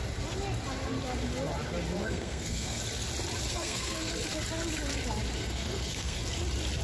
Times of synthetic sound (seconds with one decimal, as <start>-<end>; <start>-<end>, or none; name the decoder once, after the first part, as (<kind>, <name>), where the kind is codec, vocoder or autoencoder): 2.0-2.8 (codec, SNAC); 3.5-4.1; 5.4-6.2